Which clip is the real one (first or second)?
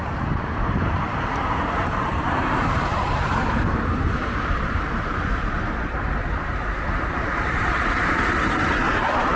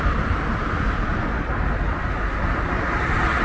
second